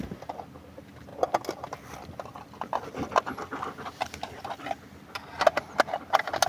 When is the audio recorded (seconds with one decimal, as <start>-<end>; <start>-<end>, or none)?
0.0-6.5